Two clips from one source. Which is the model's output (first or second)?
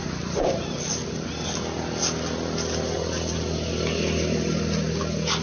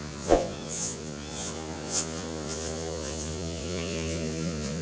second